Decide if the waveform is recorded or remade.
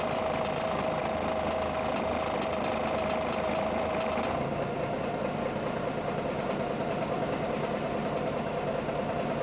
recorded